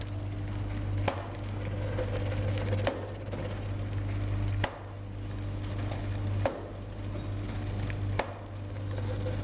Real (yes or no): yes